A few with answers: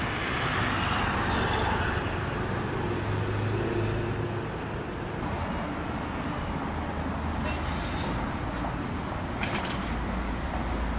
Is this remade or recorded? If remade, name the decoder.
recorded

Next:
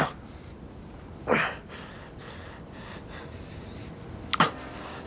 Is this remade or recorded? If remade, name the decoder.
recorded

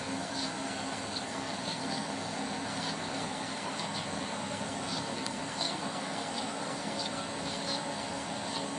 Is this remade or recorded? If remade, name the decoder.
remade, codec, SNAC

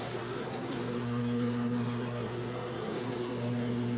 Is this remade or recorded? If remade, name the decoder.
remade, codec, SNAC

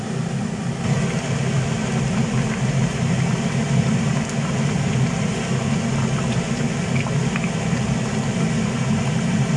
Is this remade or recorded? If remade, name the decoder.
recorded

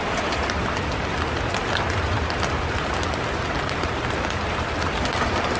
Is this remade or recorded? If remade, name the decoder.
recorded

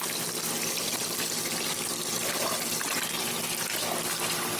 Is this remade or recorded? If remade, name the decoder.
recorded